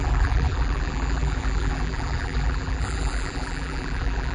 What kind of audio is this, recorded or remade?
remade